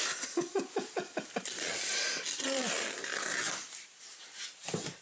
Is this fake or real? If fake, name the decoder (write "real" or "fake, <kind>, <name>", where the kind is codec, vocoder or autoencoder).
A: fake, vocoder, BigVGAN v2